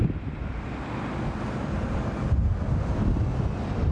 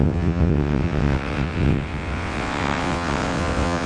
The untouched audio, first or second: first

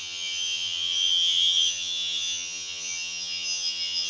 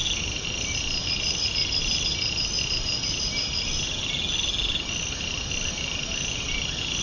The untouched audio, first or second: second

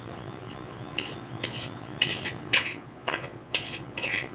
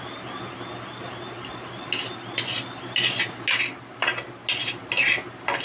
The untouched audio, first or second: second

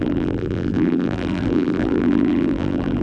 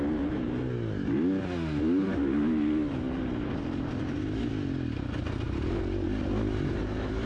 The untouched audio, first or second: second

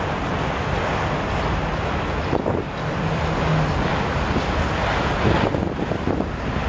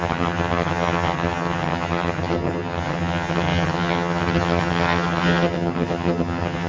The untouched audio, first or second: first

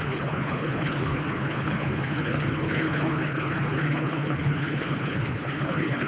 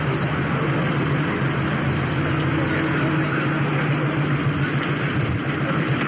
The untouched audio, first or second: second